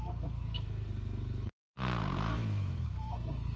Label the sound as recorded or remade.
remade